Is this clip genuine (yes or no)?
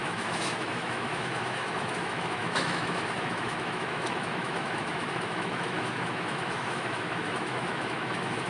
no